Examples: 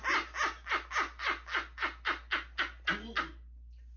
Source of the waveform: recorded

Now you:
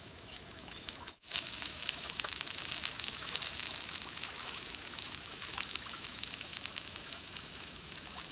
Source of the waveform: remade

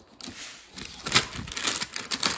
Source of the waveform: recorded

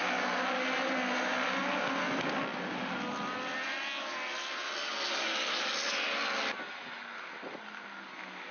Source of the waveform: recorded